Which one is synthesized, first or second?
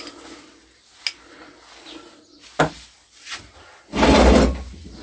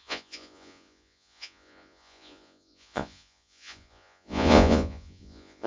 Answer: second